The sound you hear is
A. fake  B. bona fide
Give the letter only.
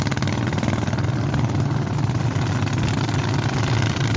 B